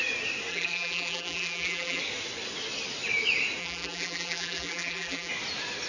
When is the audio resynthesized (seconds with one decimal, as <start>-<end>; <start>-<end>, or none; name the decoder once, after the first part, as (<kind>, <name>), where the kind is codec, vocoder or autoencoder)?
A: 0.5-2.0 (vocoder, BigVGAN v2); 3.6-5.3

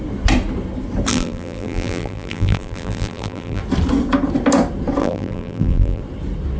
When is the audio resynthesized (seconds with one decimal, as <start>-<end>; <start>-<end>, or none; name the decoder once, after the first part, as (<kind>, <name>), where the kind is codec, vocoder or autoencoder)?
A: 1.1-3.6 (vocoder, BigVGAN v2); 5.0-6.0

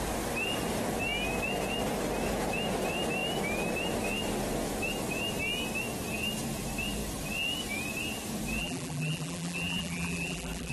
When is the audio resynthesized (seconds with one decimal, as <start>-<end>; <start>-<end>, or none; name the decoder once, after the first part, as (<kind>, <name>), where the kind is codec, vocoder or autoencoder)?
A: 8.6-10.7 (vocoder, BigVGAN v2)

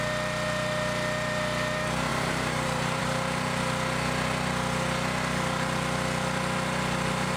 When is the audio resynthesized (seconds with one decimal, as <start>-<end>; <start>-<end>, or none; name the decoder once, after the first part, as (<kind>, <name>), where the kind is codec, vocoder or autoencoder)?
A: 2.1-3.0 (vocoder, BigVGAN v2)

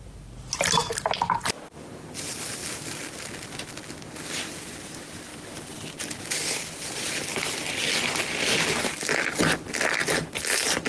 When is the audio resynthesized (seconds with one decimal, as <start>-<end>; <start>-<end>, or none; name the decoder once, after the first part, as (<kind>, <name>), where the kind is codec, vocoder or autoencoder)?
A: none

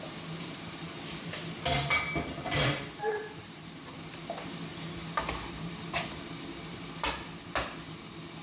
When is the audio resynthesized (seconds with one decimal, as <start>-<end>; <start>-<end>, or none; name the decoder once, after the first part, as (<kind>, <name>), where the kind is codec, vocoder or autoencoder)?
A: 0.4-4.2 (vocoder, BigVGAN v2); 4.7-6.3